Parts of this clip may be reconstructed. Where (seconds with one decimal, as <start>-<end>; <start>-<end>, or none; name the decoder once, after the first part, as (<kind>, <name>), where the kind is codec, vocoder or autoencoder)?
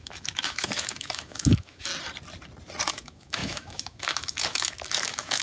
0.0-1.9 (autoencoder, DAC-VAE); 2.9-5.4